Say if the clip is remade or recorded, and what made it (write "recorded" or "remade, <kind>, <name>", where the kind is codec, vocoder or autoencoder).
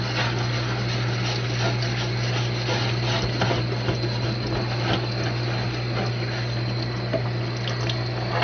recorded